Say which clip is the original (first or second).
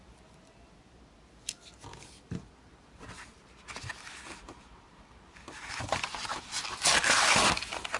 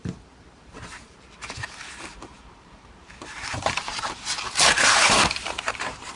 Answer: first